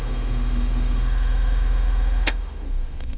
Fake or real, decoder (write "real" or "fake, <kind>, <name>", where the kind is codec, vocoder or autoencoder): fake, autoencoder, DAC-VAE